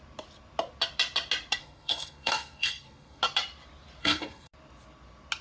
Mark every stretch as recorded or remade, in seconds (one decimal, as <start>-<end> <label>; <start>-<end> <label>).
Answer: 0.0-1.6 recorded; 1.6-3.2 remade; 3.2-4.0 recorded; 4.0-4.5 remade; 4.5-5.4 recorded